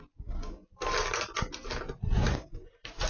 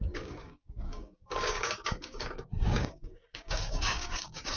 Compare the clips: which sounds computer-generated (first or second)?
second